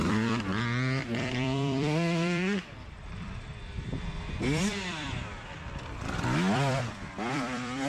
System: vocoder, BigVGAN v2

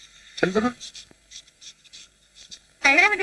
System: codec, SNAC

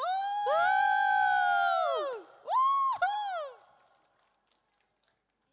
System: none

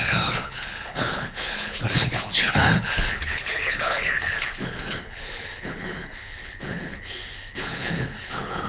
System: codec, HILCodec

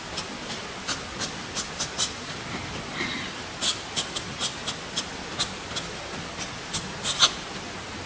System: none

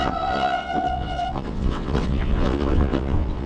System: vocoder, WaveNeXt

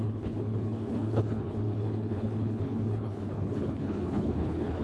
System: codec, HILCodec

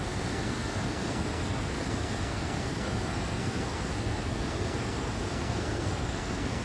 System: codec, SNAC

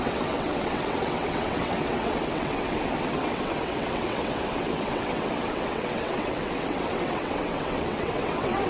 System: vocoder, WaveNeXt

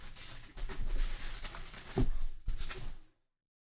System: none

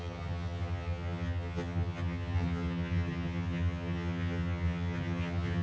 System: vocoder, HiFi-GAN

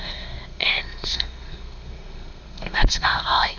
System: codec, SNAC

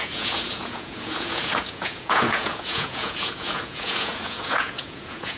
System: vocoder, Vocos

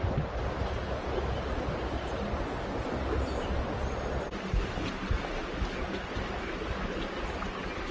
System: none